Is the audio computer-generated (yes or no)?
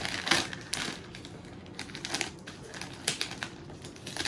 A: no